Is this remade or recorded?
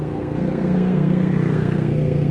remade